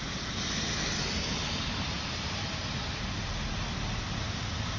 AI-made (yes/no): no